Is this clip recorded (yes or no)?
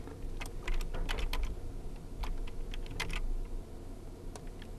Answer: yes